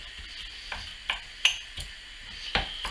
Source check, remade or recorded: recorded